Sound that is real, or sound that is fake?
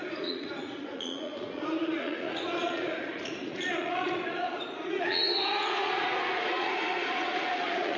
fake